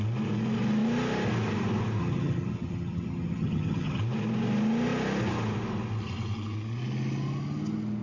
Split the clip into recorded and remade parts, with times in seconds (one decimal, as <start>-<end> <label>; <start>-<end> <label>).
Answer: 0.0-2.0 recorded; 2.0-4.0 remade; 4.0-8.0 recorded